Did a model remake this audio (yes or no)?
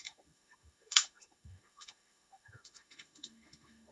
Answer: yes